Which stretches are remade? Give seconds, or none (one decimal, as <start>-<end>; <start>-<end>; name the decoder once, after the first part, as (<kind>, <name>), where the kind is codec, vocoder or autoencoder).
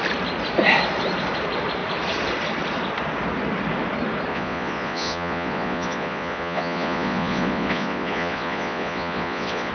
4.3-9.7 (vocoder, Vocos)